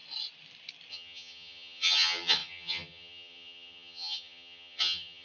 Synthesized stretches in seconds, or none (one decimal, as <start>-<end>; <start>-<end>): 0.9-5.2